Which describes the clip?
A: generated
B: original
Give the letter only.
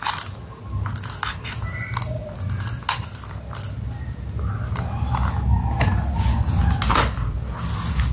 B